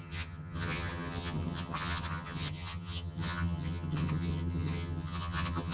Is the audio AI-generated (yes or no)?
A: yes